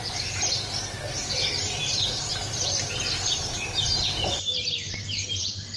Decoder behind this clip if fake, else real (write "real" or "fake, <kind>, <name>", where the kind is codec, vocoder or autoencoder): fake, vocoder, BigVGAN v2